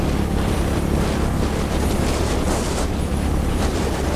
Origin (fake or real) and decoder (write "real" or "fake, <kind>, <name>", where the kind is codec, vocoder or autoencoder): fake, vocoder, BigVGAN v2